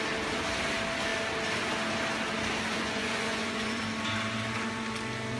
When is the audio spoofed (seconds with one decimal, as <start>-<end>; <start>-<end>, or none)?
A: 2.7-3.8